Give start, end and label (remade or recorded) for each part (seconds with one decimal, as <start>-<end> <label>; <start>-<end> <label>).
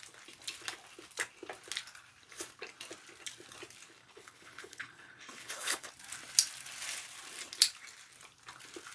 0.0-4.0 recorded; 4.0-5.9 remade; 5.9-8.9 recorded